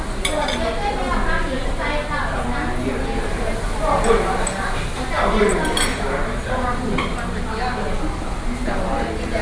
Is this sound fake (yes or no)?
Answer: no